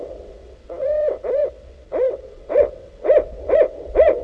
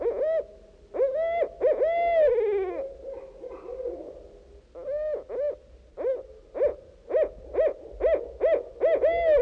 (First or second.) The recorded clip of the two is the second